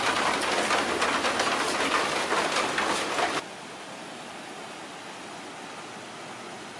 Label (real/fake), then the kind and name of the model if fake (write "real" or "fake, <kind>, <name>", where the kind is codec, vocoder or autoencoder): real